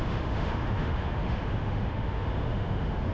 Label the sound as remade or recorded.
remade